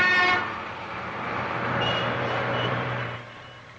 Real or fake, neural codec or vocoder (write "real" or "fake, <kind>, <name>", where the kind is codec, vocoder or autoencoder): fake, vocoder, BigVGAN v2